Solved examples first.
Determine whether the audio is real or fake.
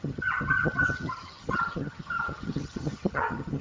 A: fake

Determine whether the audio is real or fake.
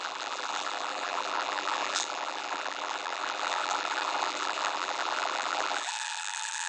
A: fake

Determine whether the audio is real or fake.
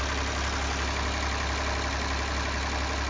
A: real